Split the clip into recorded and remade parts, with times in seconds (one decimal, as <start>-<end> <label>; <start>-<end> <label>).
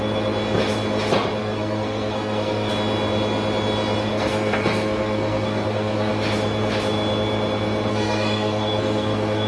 0.0-1.4 recorded; 1.4-2.7 remade; 2.7-4.1 recorded; 4.1-6.1 remade; 6.1-7.9 recorded; 7.9-9.5 remade